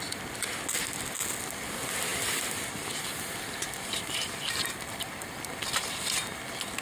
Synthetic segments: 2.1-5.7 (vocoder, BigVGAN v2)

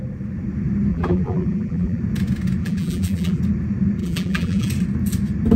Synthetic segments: 0.9-2.0 (vocoder, BigVGAN v2); 2.6-3.4; 4.0-4.7